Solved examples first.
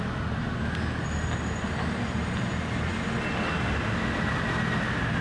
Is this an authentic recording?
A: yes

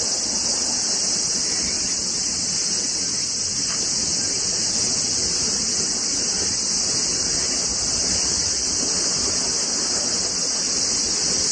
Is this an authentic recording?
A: yes